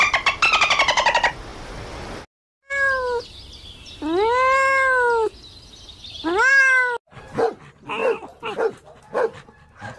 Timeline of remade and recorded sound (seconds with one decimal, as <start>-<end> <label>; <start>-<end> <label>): 0.0-10.0 recorded